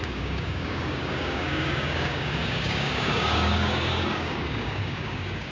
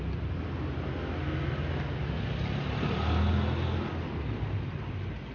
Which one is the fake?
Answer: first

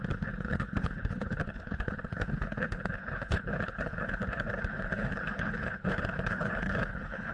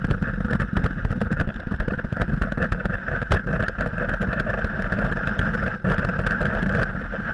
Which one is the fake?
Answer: first